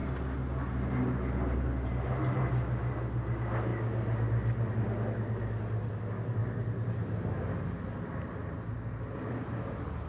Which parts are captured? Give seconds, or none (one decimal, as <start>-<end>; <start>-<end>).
0.0-10.1